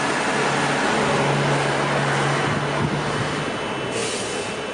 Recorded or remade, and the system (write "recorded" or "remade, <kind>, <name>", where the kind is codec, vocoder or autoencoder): recorded